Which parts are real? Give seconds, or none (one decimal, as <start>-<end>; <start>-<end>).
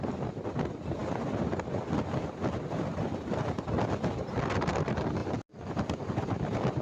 0.0-6.8